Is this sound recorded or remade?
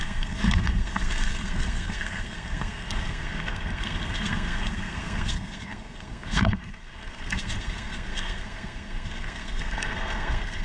remade